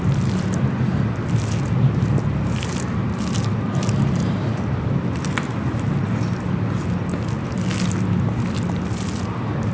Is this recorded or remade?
recorded